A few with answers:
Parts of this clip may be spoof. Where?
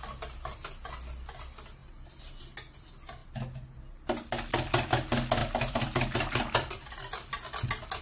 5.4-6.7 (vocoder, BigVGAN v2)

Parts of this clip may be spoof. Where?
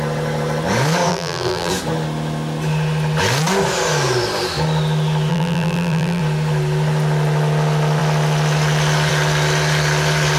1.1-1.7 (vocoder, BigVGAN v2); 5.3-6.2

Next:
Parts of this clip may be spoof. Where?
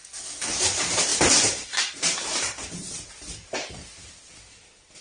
1.1-4.1 (vocoder, BigVGAN v2)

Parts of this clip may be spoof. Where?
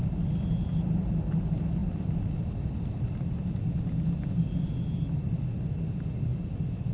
1.8-3.6 (vocoder, BigVGAN v2); 6.3-6.9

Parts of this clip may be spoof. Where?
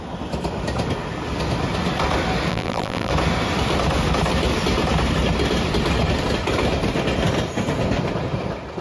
2.5-3.1 (vocoder, BigVGAN v2)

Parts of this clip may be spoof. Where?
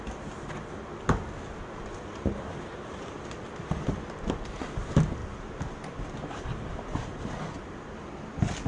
5.2-7.9 (vocoder, BigVGAN v2)